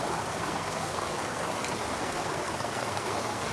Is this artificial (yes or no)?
yes